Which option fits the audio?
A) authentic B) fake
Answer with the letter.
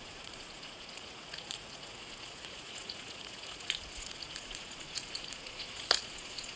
B